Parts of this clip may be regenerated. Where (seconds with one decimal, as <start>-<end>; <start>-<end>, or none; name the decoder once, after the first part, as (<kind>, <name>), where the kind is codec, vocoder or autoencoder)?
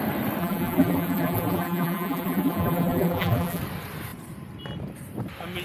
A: 0.4-3.6 (vocoder, BigVGAN v2)